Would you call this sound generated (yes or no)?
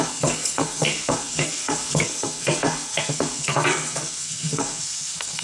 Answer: yes